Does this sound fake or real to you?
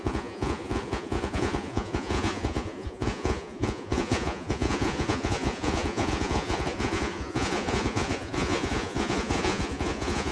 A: fake